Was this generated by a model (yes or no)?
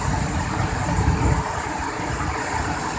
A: no